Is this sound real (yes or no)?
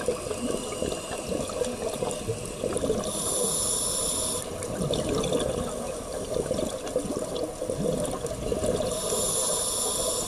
yes